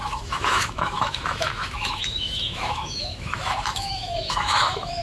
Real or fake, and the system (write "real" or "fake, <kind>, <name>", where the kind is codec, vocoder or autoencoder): fake, autoencoder, DAC-VAE